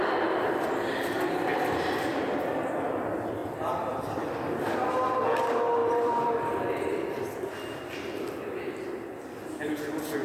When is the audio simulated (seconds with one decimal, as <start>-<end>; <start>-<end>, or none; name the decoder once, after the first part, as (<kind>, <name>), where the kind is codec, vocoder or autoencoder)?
3.4-4.6 (vocoder, BigVGAN v2); 5.8-7.5